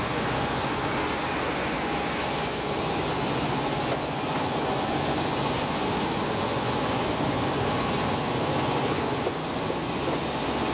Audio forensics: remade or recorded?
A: remade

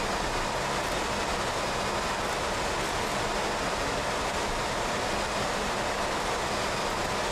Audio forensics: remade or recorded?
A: recorded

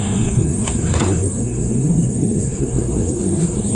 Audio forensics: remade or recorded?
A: remade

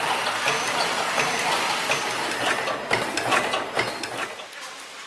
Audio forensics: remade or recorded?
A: recorded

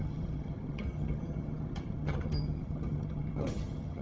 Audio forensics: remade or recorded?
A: remade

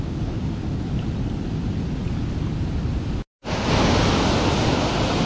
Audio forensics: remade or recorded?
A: recorded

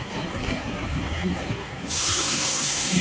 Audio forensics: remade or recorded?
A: remade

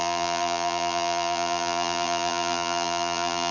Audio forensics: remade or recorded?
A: remade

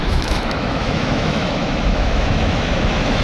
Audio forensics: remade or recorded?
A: remade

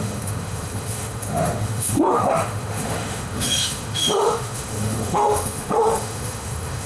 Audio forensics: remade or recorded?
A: remade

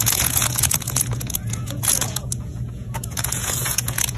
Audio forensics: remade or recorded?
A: remade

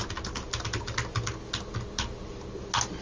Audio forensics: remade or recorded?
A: recorded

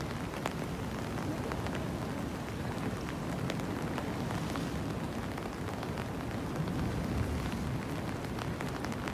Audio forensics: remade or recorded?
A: recorded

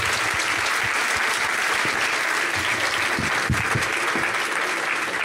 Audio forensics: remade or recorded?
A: recorded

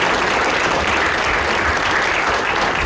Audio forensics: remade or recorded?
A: recorded